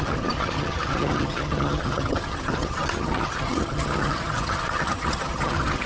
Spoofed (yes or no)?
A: yes